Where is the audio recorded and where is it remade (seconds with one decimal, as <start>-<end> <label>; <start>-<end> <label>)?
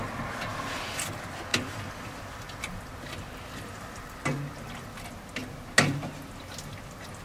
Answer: 0.0-0.5 recorded; 0.5-1.1 remade; 1.1-1.5 recorded; 1.5-4.2 remade; 4.2-7.2 recorded